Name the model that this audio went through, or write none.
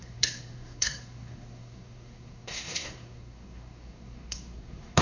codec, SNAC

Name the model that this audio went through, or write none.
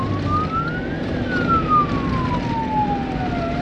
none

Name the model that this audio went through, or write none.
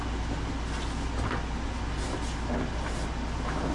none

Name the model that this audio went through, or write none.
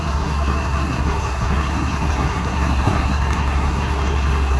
codec, SNAC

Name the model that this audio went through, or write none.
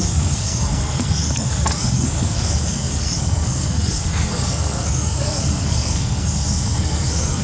codec, SNAC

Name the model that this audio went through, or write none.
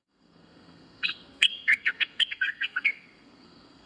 codec, SNAC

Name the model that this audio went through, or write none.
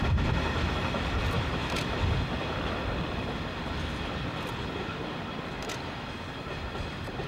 none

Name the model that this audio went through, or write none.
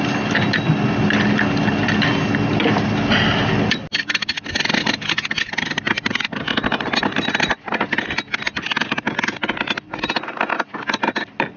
none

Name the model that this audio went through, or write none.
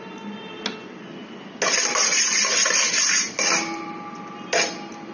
none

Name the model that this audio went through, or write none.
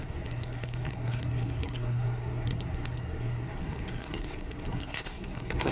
codec, SNAC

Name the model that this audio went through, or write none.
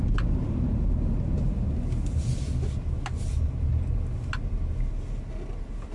none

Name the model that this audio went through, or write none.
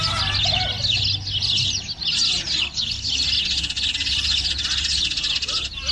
none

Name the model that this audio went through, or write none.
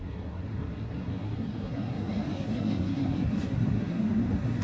codec, SNAC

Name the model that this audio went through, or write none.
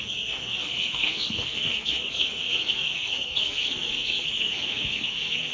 codec, SNAC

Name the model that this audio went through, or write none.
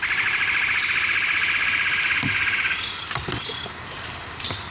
none